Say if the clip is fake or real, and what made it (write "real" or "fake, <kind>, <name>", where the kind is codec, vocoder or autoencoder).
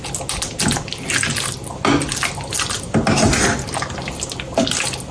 real